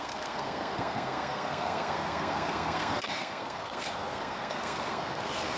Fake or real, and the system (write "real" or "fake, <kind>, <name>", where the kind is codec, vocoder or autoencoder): fake, codec, SNAC